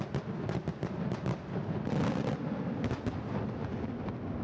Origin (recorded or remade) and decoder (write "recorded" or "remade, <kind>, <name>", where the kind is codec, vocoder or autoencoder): recorded